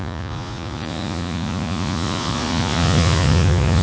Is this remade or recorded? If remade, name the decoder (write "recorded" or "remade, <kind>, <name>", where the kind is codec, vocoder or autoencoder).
remade, vocoder, Vocos